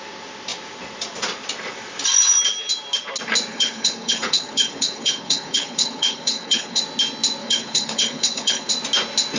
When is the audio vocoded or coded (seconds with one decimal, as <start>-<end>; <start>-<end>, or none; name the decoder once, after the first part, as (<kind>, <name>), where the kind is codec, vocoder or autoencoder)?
3.5-6.8 (codec, HILCodec); 7.4-8.7